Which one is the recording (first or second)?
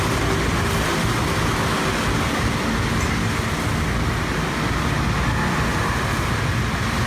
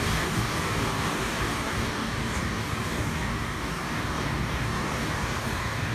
first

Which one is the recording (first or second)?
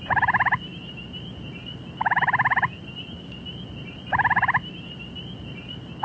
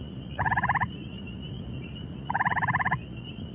first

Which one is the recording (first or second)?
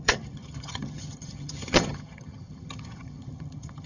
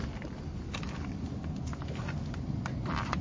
second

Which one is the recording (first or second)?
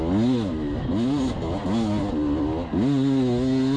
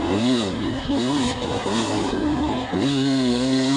first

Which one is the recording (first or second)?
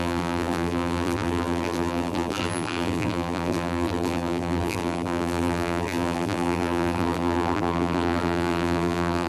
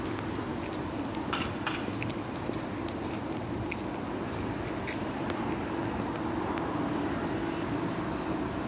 second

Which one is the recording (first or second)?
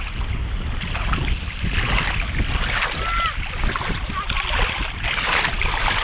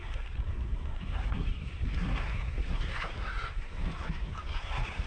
first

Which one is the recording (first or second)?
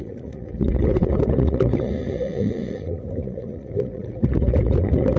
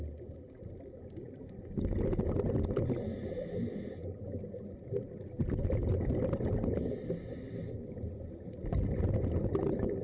second